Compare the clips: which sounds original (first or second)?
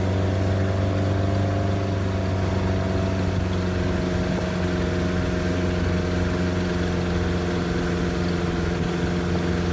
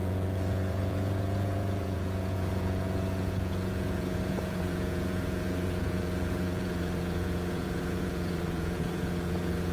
first